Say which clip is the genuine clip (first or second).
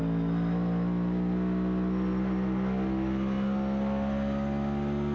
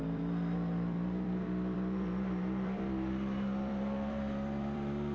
first